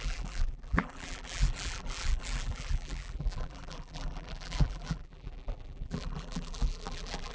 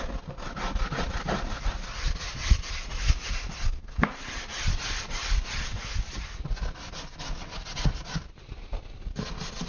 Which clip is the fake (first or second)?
first